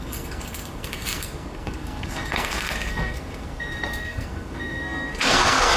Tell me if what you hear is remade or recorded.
remade